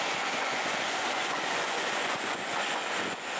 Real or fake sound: fake